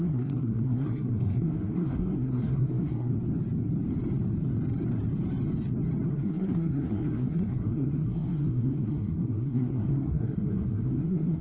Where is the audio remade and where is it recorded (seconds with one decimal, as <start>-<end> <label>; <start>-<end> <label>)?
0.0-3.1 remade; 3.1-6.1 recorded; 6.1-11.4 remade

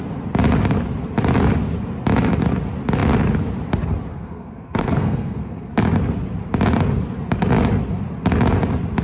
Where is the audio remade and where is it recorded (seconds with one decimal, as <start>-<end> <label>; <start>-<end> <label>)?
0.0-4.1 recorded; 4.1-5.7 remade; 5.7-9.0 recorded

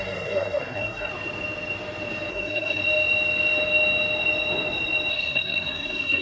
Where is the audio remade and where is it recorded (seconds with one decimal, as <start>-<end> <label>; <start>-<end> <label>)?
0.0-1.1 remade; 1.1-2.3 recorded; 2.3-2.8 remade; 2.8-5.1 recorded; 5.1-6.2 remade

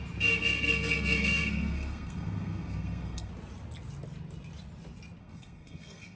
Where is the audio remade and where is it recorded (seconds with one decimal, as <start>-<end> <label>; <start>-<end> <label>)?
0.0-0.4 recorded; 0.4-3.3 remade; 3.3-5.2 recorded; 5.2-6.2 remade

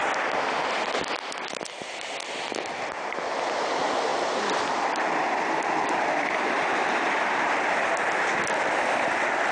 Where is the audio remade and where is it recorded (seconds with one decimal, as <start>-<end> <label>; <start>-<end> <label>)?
0.0-9.5 recorded